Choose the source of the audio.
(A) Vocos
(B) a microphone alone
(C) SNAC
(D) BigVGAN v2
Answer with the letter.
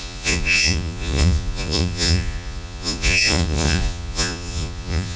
A